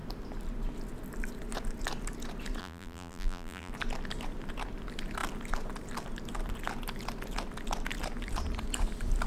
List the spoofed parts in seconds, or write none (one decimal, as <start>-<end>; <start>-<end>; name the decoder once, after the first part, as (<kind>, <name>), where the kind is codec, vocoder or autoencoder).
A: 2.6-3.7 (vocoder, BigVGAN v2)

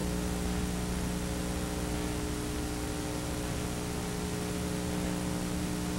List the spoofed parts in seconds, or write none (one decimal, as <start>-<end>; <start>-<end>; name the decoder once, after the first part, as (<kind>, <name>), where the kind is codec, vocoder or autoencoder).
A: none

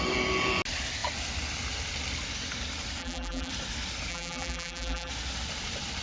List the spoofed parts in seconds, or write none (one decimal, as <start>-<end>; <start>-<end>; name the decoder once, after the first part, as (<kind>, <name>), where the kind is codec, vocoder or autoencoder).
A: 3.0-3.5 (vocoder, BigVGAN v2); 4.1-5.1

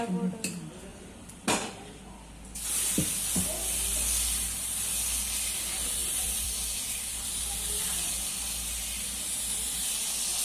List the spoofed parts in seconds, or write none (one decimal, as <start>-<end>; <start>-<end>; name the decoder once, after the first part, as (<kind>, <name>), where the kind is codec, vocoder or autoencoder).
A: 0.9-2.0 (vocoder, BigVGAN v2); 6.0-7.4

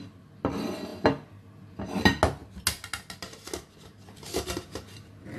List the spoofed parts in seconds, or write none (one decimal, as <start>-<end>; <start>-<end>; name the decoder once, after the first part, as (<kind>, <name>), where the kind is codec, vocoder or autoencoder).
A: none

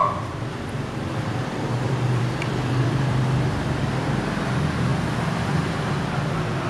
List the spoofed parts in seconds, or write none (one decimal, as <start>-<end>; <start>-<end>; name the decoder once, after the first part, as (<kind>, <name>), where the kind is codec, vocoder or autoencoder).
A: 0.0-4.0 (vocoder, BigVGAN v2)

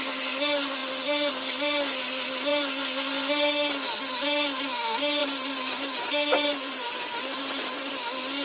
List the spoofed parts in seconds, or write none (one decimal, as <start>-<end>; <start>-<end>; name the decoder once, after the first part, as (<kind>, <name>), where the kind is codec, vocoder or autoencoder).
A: 5.2-7.9 (vocoder, BigVGAN v2)

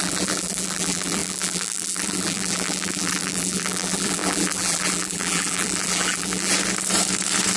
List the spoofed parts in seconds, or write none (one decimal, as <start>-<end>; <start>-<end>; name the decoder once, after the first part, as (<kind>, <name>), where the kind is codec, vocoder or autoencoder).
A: 0.0-6.5 (vocoder, BigVGAN v2)